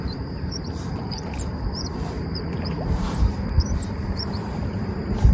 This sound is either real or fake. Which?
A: fake